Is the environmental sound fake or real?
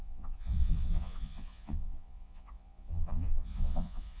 fake